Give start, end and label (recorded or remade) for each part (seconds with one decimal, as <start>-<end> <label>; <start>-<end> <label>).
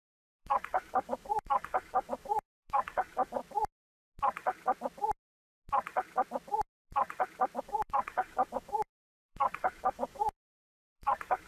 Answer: 0.0-3.4 remade; 3.4-7.6 recorded; 7.6-11.5 remade